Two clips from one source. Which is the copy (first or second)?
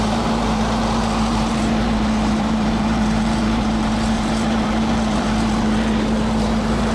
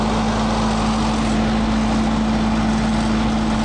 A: first